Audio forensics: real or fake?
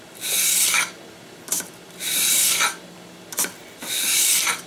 fake